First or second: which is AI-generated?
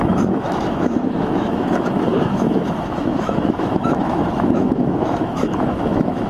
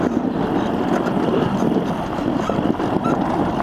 first